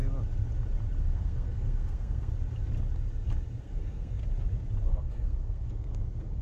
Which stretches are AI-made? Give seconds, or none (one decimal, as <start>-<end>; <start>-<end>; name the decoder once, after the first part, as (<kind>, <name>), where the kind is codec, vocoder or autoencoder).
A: 1.0-2.3 (codec, SNAC); 3.6-4.2; 4.9-6.4